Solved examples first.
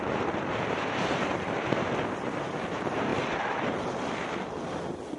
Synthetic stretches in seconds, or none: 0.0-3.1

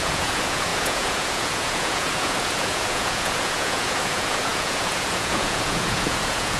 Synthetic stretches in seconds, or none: 0.0-6.6